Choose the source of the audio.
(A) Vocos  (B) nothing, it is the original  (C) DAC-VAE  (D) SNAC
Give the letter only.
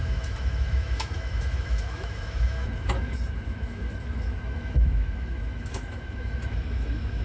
C